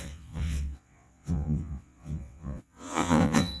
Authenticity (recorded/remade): remade